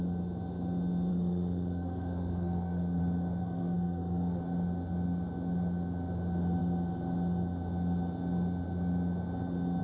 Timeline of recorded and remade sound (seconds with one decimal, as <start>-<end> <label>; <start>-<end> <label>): 0.0-1.1 recorded; 1.1-3.0 remade; 3.0-3.4 recorded; 3.4-4.4 remade; 4.4-9.8 recorded